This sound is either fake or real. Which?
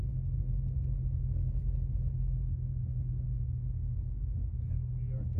real